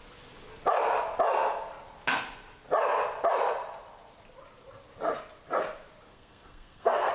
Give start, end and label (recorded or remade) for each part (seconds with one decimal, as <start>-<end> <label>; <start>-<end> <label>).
0.0-6.1 recorded; 6.1-7.1 remade